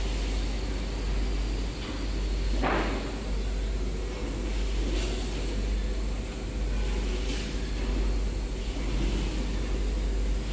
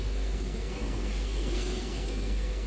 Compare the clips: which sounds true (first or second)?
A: first